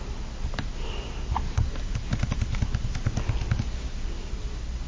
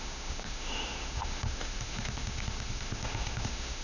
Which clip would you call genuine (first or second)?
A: first